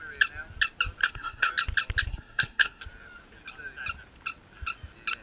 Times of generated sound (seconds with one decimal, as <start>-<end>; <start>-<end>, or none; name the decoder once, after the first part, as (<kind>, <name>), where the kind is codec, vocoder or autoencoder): 1.0-1.5 (codec, SNAC); 2.1-2.8